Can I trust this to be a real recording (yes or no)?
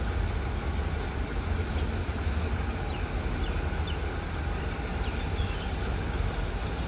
yes